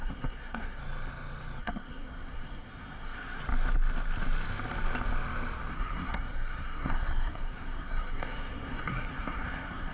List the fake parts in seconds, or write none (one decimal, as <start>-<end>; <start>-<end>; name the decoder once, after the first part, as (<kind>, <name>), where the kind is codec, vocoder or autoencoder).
0.0-0.8 (codec, SNAC); 1.6-3.4; 5.7-9.9